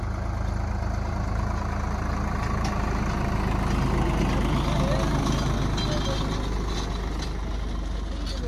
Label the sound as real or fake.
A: real